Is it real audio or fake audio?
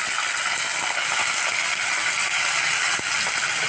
real